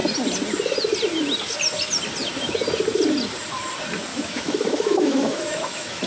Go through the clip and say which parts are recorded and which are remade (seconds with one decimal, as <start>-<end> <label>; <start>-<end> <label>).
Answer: 0.0-4.1 recorded; 4.1-6.1 remade